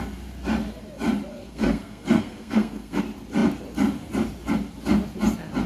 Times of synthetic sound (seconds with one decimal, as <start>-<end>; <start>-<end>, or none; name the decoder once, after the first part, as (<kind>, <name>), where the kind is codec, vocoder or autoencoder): 1.3-3.0 (codec, SNAC)